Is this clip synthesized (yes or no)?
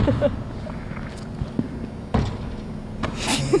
no